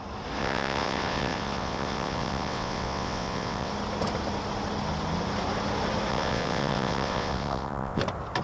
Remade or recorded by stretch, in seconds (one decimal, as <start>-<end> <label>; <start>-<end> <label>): 0.0-0.4 recorded; 0.4-3.7 remade; 3.7-6.1 recorded; 6.1-8.0 remade; 8.0-8.4 recorded